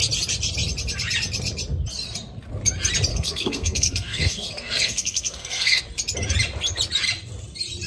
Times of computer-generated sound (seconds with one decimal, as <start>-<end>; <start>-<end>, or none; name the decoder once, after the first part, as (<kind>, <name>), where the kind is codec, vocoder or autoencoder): 3.1-5.8 (codec, SNAC)